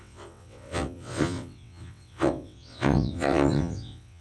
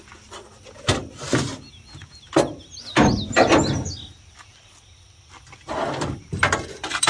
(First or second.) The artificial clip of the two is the first